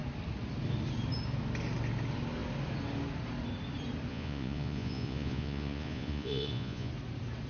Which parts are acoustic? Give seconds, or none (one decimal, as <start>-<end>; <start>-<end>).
0.0-4.1; 6.9-7.5